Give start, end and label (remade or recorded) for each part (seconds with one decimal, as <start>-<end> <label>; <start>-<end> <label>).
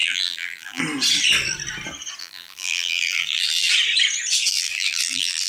0.0-0.8 remade; 0.8-2.2 recorded; 2.2-3.7 remade; 3.7-4.5 recorded; 4.5-5.5 remade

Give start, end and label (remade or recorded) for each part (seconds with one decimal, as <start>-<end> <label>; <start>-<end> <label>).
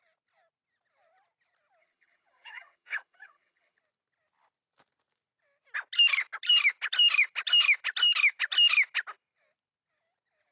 0.0-1.8 recorded; 1.8-3.8 remade; 3.8-10.5 recorded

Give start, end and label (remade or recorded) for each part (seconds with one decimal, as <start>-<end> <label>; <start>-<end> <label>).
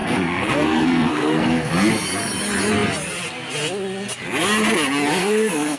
0.0-1.7 remade; 1.7-5.2 recorded; 5.2-5.8 remade